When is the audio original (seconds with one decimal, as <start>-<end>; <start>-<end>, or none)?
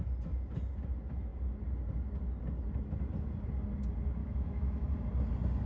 0.0-4.2; 4.9-5.7